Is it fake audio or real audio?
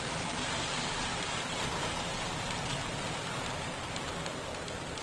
fake